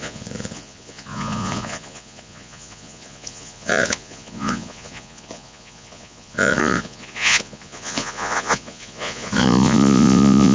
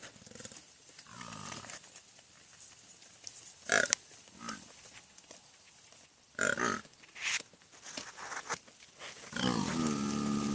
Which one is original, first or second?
second